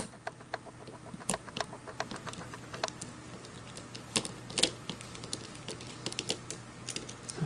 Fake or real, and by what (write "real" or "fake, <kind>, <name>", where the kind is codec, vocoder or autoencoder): real